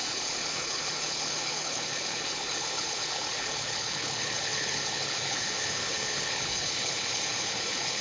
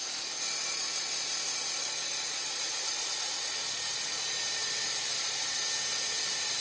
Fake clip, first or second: first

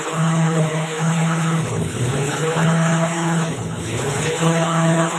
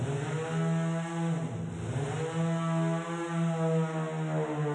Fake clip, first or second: first